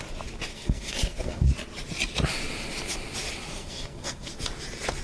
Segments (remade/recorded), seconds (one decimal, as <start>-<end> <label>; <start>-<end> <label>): 0.0-0.5 recorded; 0.5-1.5 remade; 1.5-3.5 recorded; 3.5-4.3 remade; 4.3-5.0 recorded